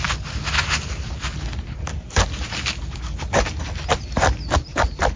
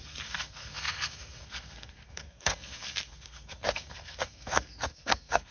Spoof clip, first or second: second